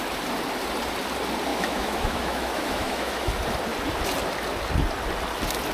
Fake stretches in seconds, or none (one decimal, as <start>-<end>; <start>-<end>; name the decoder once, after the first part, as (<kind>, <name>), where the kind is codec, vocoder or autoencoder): 1.5-3.3 (autoencoder, DAC-VAE)